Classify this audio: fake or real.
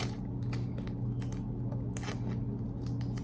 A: real